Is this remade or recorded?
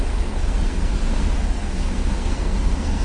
remade